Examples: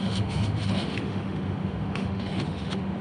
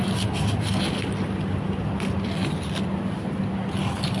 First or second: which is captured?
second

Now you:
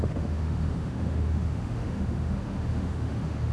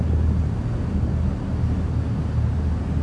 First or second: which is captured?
second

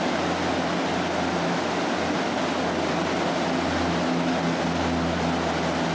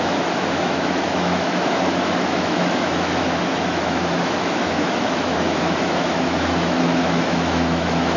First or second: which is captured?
first